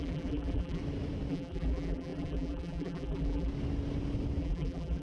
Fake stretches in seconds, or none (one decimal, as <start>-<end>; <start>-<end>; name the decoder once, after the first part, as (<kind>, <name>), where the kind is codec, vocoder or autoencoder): 0.0-0.8 (vocoder, BigVGAN v2); 1.3-3.5; 4.4-5.0